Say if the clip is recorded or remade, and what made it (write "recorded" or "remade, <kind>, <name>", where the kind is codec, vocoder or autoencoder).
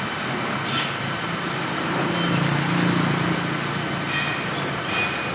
recorded